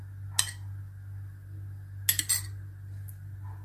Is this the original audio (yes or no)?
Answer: yes